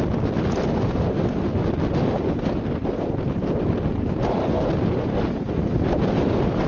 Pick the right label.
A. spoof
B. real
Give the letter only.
B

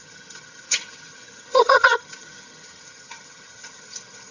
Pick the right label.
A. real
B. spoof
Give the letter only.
B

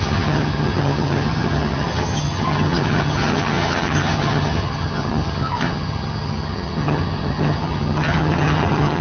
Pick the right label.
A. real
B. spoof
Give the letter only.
B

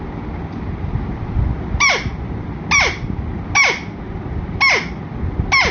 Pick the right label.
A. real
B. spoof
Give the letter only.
A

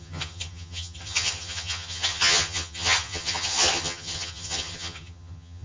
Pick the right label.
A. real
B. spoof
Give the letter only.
B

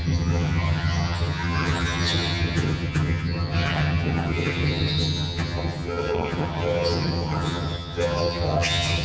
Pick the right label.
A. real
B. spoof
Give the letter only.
B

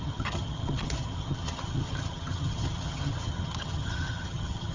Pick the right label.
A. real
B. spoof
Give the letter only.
B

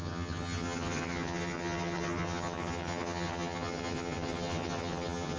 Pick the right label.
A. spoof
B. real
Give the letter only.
A